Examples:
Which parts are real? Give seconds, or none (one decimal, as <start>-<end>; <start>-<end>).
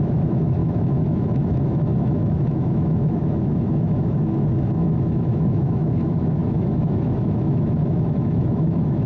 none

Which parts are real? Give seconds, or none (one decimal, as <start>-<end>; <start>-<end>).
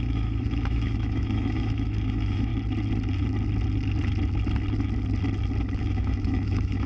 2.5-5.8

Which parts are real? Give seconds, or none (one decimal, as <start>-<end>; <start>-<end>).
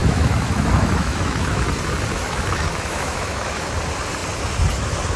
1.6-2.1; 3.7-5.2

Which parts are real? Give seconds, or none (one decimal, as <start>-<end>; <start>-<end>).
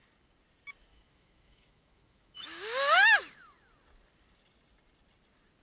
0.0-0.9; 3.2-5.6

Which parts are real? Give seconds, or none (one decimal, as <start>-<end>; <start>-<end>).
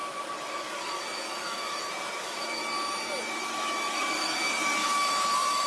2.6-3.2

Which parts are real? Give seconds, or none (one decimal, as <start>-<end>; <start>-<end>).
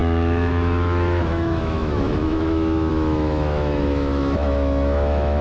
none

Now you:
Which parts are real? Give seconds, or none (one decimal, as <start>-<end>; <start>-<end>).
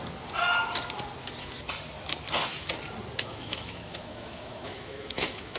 0.0-3.3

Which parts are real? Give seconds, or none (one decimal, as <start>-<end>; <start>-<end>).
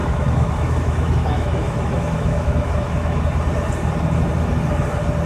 3.2-5.3